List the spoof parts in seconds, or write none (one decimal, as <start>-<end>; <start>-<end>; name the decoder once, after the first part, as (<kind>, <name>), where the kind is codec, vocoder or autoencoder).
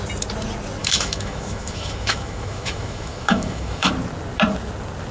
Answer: 0.8-3.9 (autoencoder, DAC-VAE)